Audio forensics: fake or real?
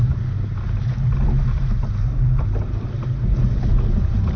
real